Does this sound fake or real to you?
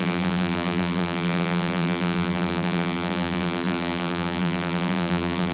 fake